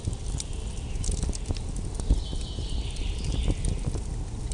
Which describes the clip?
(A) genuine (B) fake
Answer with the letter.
A